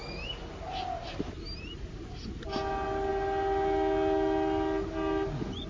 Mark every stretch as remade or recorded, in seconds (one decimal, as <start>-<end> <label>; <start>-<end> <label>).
0.0-5.7 recorded